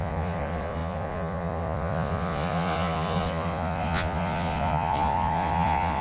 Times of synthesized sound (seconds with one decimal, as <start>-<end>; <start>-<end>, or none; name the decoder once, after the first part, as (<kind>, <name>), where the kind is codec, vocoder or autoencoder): 0.0-6.0 (vocoder, Vocos)